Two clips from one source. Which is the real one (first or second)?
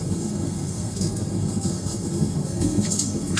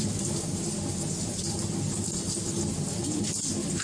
second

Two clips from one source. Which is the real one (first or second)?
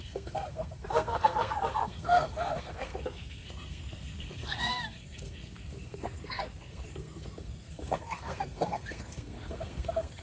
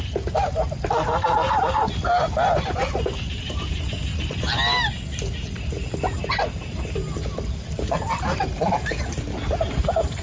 second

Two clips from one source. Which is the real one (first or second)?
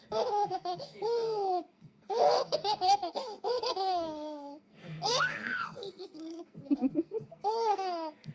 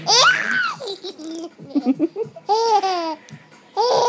second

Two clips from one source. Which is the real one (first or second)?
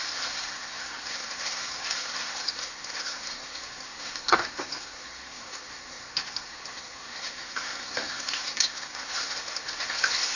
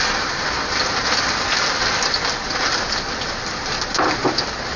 second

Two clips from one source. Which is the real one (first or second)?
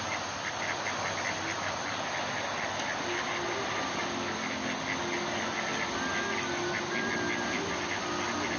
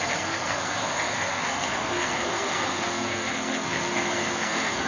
first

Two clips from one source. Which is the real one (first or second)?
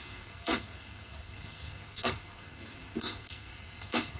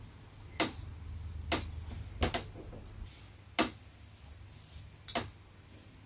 second